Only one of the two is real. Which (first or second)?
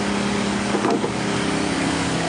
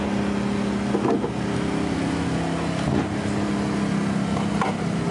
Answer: second